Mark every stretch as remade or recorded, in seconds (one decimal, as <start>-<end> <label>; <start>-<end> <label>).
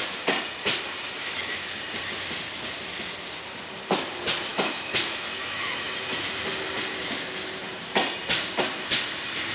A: 0.0-1.2 recorded; 1.2-1.7 remade; 1.7-4.5 recorded; 4.5-5.9 remade; 5.9-9.5 recorded